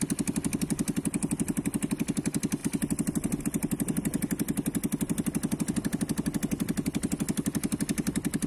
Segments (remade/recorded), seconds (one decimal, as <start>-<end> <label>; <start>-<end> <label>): 0.0-8.5 recorded